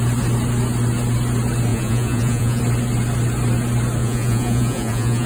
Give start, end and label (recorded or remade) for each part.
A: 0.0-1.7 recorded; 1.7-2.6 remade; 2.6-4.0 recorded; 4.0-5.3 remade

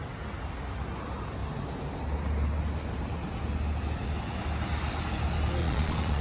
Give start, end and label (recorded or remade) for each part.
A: 0.0-5.6 recorded; 5.6-6.2 remade

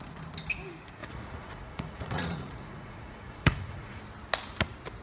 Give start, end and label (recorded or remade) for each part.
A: 0.0-1.0 recorded; 1.0-4.0 remade; 4.0-5.0 recorded

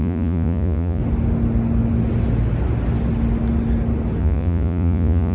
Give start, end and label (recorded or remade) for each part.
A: 0.0-1.0 remade; 1.0-4.2 recorded; 4.2-5.3 remade